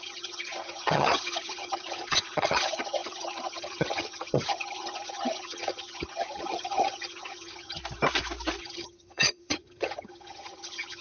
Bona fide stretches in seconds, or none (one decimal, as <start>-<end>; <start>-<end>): 7.8-8.6